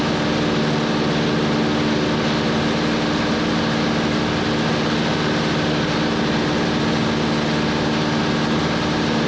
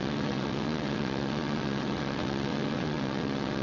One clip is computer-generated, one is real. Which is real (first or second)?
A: first